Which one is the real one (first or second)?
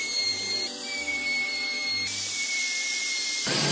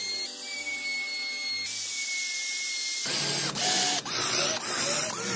second